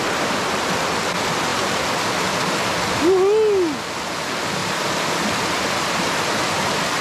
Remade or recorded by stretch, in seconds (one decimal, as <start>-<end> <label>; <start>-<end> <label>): 0.0-7.0 recorded